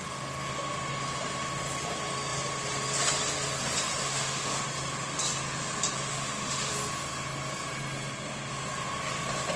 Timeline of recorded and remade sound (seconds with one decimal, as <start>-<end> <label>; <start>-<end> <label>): 0.0-4.0 recorded; 4.0-4.6 remade; 4.6-6.1 recorded; 6.1-6.7 remade; 6.7-9.6 recorded